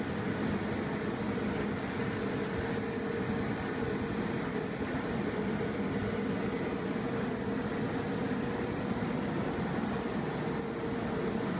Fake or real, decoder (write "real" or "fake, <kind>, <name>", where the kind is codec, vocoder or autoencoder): real